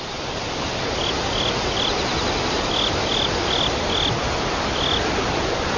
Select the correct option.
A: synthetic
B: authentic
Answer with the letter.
B